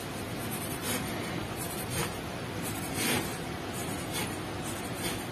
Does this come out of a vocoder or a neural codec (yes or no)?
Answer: yes